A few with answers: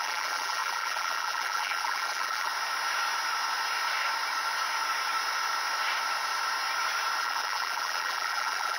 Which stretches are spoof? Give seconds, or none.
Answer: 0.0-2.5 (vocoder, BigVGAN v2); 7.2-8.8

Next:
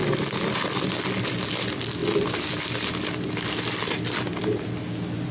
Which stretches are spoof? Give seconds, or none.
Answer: 0.0-0.9 (vocoder, BigVGAN v2)

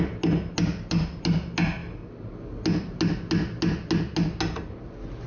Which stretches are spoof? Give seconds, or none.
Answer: none

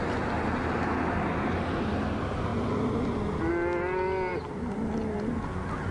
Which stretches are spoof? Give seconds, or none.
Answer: none